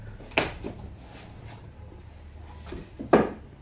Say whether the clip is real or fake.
real